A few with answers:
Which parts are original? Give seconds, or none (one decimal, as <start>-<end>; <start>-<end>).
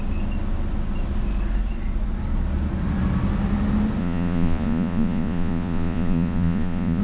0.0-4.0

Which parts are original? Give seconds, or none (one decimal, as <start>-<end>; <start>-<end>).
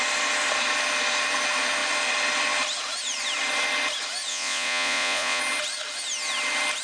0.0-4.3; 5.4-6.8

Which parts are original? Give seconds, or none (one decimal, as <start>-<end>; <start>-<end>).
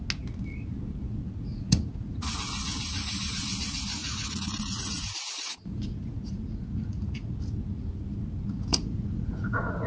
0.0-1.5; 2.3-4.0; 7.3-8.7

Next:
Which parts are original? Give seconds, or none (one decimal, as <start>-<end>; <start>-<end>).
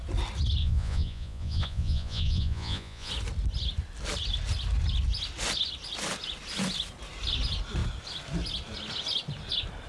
0.0-0.6; 3.1-9.9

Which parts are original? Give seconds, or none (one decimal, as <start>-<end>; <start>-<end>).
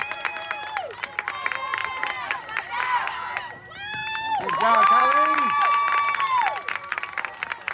0.0-7.7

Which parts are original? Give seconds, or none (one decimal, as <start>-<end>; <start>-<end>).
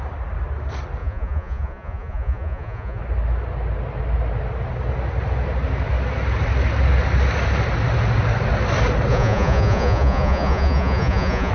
0.0-1.0; 3.0-9.1